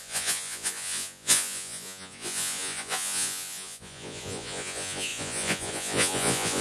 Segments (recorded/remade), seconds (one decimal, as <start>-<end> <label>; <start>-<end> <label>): 0.0-6.6 remade